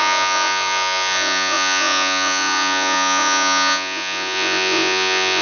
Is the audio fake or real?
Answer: fake